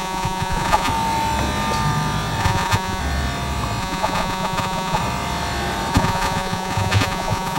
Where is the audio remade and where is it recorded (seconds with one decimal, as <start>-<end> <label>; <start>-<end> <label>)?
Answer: 0.0-0.9 remade; 0.9-2.4 recorded; 2.4-3.0 remade; 3.0-3.8 recorded; 3.8-5.0 remade; 5.0-5.9 recorded; 5.9-7.6 remade